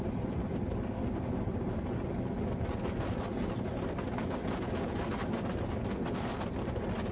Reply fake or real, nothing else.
real